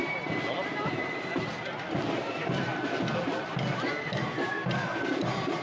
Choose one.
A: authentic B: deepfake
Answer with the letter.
A